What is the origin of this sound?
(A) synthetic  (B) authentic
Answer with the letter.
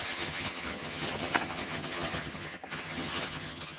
A